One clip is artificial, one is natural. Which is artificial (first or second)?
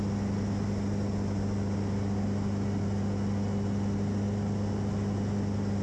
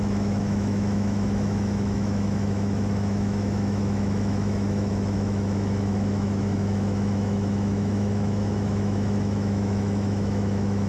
second